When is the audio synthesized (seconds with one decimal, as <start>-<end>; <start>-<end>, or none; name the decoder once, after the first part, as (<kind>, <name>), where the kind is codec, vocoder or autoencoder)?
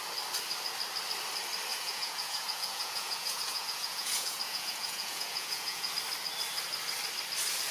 1.7-5.9 (vocoder, Vocos)